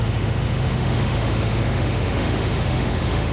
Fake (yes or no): yes